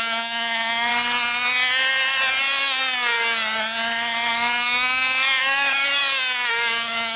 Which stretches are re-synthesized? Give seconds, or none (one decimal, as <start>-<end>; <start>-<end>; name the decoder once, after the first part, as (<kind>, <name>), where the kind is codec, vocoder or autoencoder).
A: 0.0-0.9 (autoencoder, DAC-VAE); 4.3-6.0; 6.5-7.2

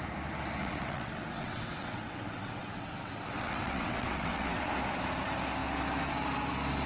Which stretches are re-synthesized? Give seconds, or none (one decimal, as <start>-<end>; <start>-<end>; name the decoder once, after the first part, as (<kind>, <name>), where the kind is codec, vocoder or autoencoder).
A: 0.6-4.7 (vocoder, WaveNeXt)

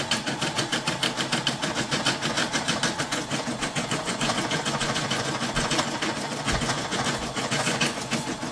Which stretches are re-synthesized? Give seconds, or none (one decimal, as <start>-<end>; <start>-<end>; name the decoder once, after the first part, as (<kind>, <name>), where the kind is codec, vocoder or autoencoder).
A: 0.0-0.7 (vocoder, Vocos); 1.7-2.4; 3.0-8.5